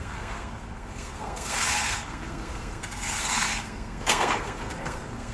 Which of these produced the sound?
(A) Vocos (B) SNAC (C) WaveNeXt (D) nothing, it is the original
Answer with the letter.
B